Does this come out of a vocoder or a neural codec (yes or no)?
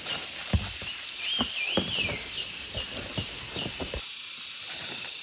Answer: no